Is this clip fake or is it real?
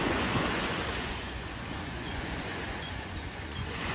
fake